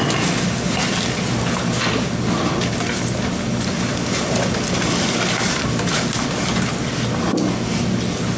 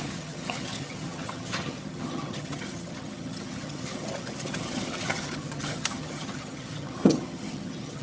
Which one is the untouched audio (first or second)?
first